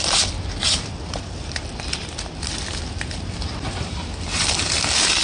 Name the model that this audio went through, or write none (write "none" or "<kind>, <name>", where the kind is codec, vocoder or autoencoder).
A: none